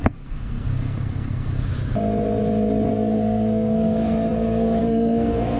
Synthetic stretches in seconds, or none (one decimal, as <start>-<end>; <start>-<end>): 0.0-1.7; 2.9-5.6